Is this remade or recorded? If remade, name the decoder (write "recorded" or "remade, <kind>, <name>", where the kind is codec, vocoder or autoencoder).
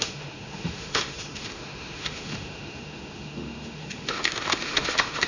remade, autoencoder, DAC-VAE